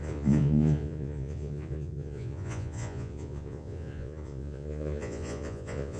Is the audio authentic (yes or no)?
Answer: no